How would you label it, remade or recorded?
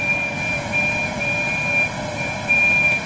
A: recorded